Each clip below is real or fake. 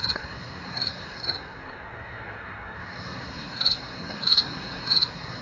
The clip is fake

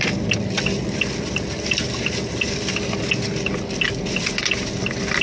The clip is real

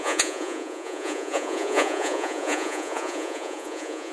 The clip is fake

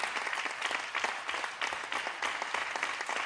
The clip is real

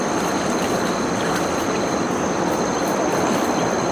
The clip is real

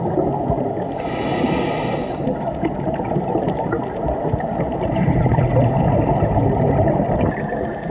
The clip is real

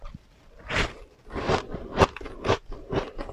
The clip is fake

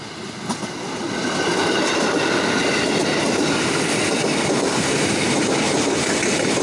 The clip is real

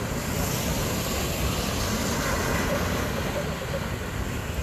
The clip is real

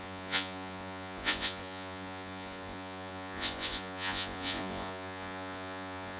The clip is fake